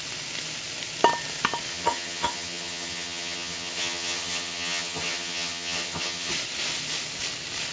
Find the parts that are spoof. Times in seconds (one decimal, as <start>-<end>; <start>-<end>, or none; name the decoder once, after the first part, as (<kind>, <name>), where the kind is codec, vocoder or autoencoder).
1.7-6.3 (vocoder, HiFi-GAN)